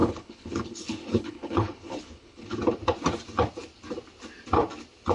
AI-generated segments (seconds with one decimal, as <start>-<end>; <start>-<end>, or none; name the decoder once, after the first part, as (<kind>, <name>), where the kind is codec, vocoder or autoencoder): 0.0-2.6 (codec, HILCodec)